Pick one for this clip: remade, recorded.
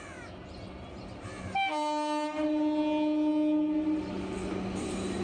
recorded